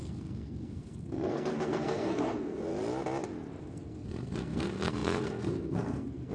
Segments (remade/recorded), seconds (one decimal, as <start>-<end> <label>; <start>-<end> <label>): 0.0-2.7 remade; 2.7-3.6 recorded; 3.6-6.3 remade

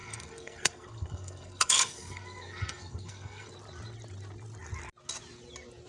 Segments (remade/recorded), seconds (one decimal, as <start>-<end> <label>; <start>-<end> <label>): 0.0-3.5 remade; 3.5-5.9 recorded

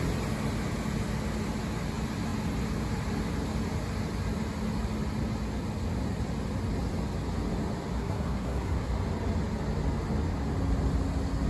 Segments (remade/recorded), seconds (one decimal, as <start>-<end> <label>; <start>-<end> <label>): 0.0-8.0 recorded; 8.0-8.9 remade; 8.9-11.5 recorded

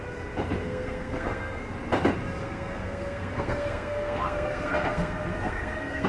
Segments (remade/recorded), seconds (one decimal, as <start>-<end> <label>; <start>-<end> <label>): 0.0-0.6 recorded; 0.6-1.7 remade; 1.7-2.4 recorded; 2.4-6.1 remade

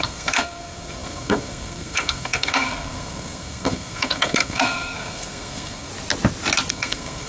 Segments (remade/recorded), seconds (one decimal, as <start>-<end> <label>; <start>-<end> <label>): 0.0-5.9 remade; 5.9-6.7 recorded; 6.7-7.3 remade

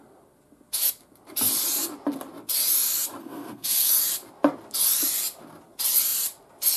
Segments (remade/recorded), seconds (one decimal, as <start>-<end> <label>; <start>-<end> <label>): 0.0-3.2 recorded; 3.2-3.9 remade; 3.9-6.8 recorded